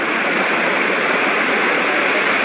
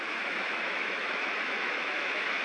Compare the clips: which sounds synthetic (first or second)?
second